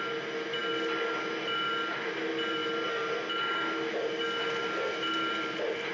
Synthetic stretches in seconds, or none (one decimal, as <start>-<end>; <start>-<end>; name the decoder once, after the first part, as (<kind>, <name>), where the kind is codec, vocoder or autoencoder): none